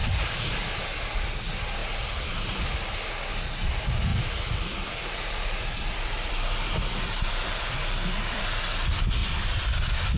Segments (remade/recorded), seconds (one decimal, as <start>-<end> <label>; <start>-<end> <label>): 0.0-1.2 remade; 1.2-4.1 recorded; 4.1-8.4 remade; 8.4-9.2 recorded; 9.2-10.2 remade